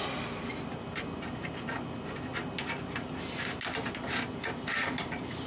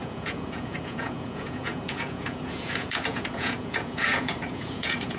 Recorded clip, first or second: first